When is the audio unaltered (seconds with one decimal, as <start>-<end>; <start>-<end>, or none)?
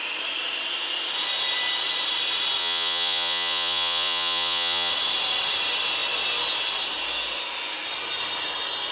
0.0-2.6; 4.9-8.9